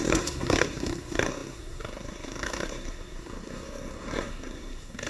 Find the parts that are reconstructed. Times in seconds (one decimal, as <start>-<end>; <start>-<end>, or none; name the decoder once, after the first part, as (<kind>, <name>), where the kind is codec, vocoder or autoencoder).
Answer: 0.0-5.1 (codec, SNAC)